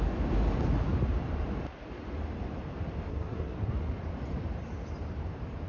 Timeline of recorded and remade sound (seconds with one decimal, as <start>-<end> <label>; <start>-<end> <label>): 0.0-3.1 recorded; 3.1-3.7 remade; 3.7-5.7 recorded